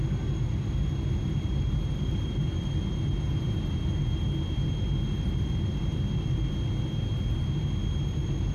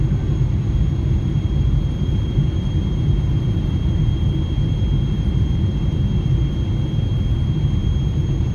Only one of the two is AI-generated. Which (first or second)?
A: second